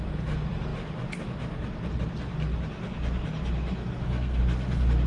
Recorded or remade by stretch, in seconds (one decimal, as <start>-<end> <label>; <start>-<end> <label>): 0.0-3.8 recorded; 3.8-4.4 remade; 4.4-5.1 recorded